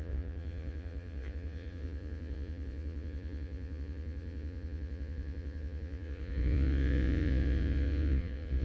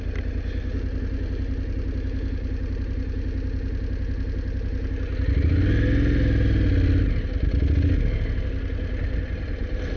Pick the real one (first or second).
second